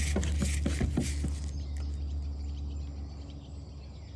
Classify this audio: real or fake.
real